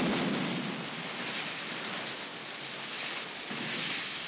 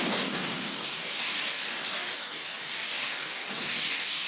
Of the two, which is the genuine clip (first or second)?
first